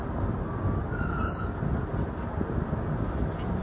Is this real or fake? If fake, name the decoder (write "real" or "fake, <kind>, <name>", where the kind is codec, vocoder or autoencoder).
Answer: real